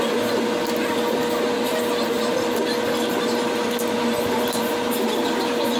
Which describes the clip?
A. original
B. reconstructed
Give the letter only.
A